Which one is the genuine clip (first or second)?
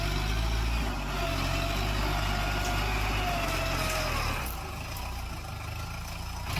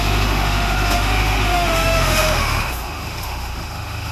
first